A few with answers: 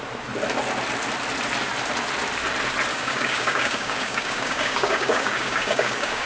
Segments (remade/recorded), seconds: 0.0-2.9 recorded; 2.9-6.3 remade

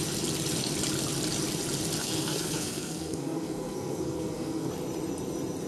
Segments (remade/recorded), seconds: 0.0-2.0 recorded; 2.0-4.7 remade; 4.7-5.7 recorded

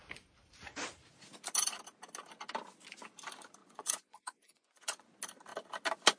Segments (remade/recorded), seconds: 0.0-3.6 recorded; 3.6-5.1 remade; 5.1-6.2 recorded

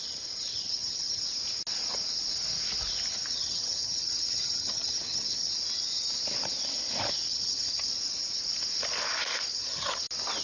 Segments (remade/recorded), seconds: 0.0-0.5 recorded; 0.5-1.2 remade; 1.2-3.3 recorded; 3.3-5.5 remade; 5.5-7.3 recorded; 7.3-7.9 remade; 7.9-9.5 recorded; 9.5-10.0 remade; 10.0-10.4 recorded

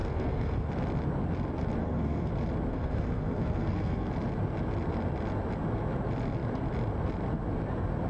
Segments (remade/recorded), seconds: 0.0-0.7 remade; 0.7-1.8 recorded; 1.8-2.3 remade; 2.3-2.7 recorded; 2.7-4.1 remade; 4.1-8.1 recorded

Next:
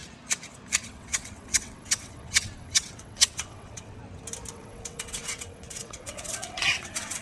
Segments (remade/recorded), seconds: 0.0-0.8 recorded; 0.8-4.0 remade; 4.0-4.5 recorded; 4.5-7.2 remade

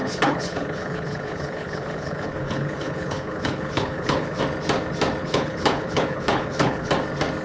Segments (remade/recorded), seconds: 0.0-4.4 remade; 4.4-5.2 recorded; 5.2-6.9 remade; 6.9-7.4 recorded